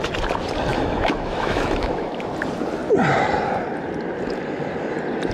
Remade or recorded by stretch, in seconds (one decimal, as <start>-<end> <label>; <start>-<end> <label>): 0.0-0.7 recorded; 0.7-2.3 remade; 2.3-5.3 recorded